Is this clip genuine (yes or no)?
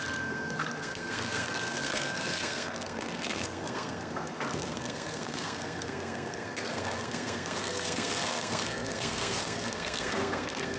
no